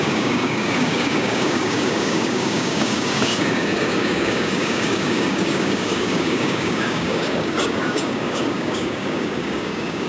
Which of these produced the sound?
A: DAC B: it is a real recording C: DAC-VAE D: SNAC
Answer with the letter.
A